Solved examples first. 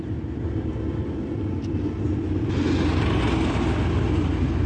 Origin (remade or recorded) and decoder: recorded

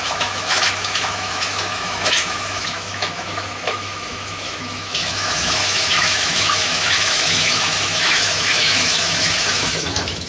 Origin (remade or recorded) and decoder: remade, autoencoder, DAC-VAE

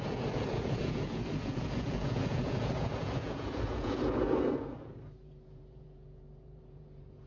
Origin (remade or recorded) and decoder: remade, vocoder, Vocos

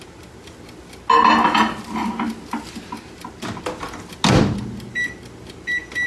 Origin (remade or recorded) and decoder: recorded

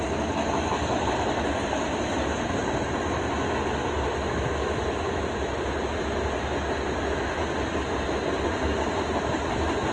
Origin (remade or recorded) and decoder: recorded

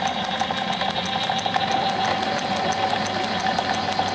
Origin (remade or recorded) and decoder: recorded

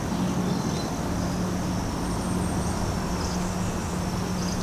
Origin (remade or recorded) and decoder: recorded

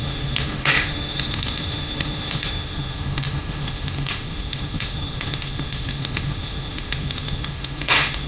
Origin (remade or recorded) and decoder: remade, autoencoder, DAC-VAE